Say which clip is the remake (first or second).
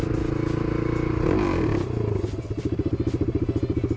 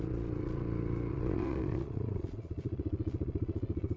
second